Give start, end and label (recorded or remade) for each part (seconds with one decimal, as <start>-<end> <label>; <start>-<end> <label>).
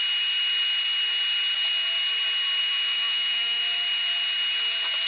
0.0-2.6 recorded; 2.6-3.6 remade; 3.6-5.1 recorded